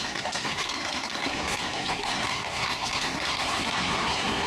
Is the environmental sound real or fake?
fake